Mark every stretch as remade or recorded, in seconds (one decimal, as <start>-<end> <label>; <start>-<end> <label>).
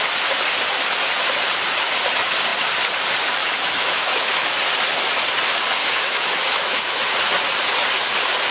0.0-3.4 recorded; 3.4-4.5 remade; 4.5-5.8 recorded; 5.8-7.1 remade; 7.1-8.5 recorded